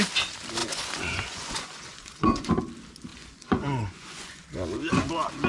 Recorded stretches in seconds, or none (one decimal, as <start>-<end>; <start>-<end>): 0.0-0.6; 2.5-3.1; 4.4-5.5